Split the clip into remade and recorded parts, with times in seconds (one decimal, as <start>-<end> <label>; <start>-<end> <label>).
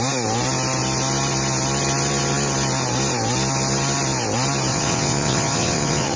0.0-4.7 recorded; 4.7-6.2 remade